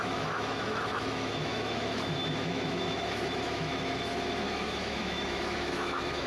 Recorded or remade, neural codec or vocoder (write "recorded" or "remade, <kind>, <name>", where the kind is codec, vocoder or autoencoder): remade, autoencoder, DAC-VAE